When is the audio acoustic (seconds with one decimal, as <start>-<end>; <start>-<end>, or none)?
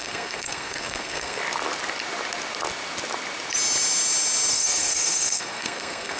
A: 1.4-4.5